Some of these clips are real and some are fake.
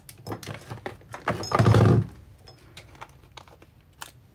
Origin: real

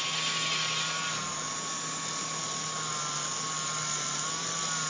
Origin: real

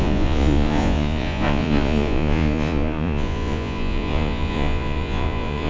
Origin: fake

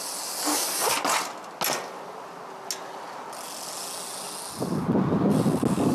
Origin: real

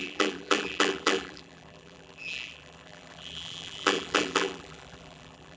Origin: fake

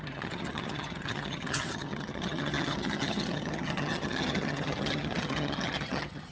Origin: fake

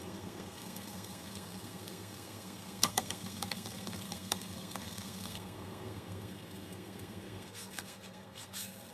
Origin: fake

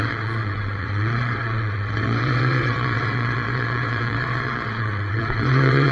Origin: fake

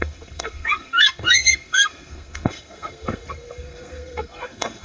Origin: fake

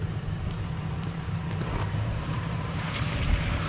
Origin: fake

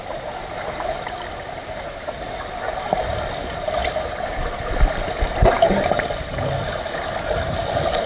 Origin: real